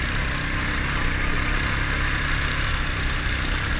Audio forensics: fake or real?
real